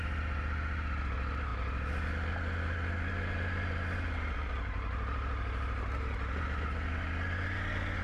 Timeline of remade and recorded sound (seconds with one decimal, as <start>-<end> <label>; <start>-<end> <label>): 0.0-8.0 recorded